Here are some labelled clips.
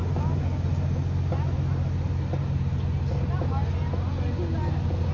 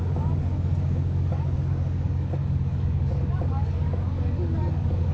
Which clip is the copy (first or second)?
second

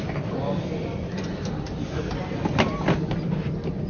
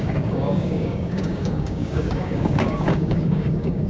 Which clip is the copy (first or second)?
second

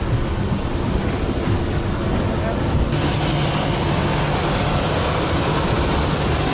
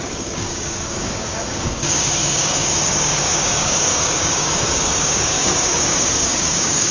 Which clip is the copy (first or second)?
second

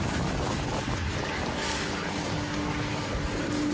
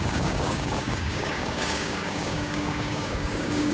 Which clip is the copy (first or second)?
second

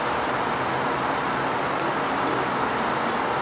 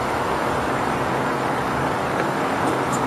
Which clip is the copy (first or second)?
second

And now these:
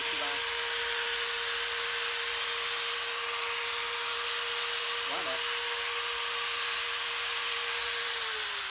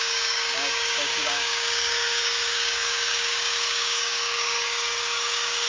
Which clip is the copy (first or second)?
second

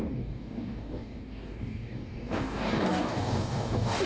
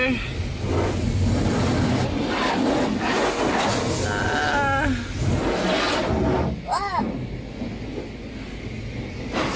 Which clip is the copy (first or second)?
first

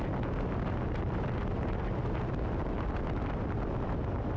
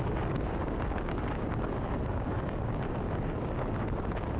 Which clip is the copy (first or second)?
second